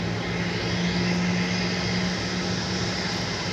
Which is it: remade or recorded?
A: recorded